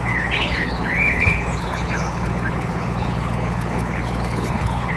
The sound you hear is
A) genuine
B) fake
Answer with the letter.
B